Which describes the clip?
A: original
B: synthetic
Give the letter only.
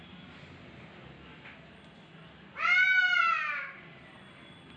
A